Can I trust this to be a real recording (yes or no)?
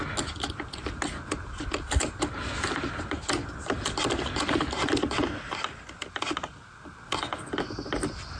yes